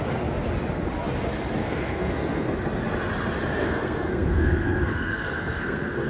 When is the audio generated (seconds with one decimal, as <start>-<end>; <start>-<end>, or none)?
1.6-2.5; 3.6-6.1

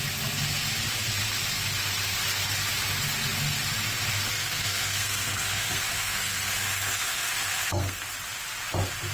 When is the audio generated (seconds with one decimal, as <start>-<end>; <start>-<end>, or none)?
4.3-8.0

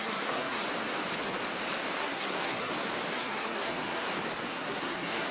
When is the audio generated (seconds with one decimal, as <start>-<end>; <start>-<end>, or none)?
0.0-0.6; 2.0-2.7; 3.1-4.1; 4.5-5.3

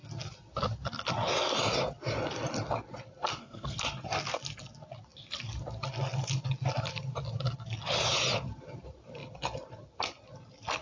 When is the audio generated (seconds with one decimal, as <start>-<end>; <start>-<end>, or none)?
3.3-3.8

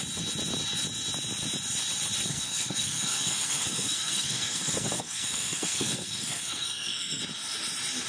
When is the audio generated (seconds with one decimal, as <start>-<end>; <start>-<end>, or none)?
2.3-7.2

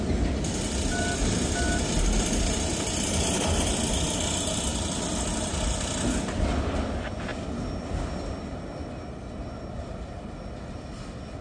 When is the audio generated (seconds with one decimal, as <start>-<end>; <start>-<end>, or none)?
none

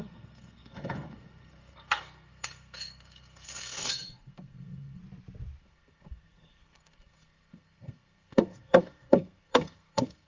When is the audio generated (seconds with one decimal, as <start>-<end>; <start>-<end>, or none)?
0.0-5.0; 5.6-10.3